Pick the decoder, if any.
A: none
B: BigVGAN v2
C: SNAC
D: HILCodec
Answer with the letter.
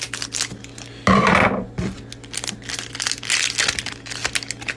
A